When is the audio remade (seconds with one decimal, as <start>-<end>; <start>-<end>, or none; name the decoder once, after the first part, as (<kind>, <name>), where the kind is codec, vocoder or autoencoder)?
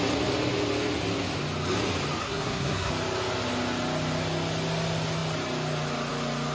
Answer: 2.2-2.9 (codec, SNAC)